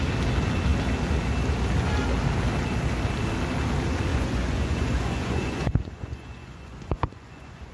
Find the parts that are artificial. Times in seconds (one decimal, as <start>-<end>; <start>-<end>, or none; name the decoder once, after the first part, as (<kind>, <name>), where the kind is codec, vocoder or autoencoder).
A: 4.1-7.7 (vocoder, Vocos)